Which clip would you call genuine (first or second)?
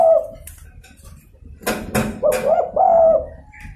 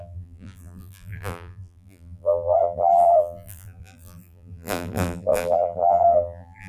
first